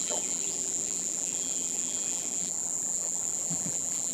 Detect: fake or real fake